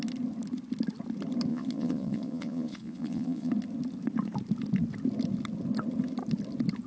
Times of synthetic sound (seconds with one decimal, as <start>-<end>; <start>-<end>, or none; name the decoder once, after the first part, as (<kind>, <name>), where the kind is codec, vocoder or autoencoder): 1.5-3.5 (vocoder, Vocos)